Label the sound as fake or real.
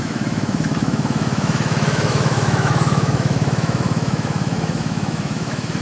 fake